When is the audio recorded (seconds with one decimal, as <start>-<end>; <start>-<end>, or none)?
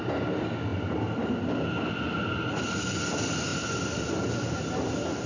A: 0.0-5.3